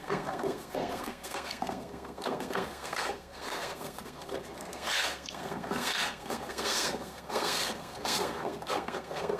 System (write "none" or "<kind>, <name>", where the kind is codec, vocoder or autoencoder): codec, SNAC